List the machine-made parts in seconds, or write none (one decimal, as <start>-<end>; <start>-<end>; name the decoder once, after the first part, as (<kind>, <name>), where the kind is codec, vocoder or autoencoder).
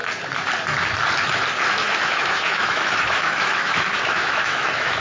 1.8-5.0 (autoencoder, DAC-VAE)